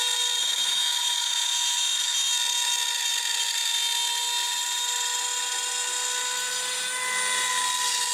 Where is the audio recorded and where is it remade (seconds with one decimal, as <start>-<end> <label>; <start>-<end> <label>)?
0.0-0.4 recorded; 0.4-2.3 remade; 2.3-8.1 recorded